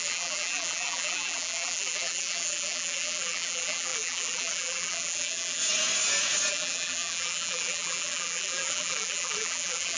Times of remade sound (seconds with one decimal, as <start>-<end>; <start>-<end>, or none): 0.0-5.6; 6.5-10.0